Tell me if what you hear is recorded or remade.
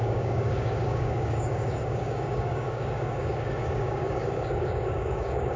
remade